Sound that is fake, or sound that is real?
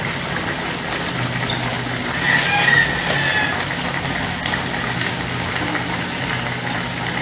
real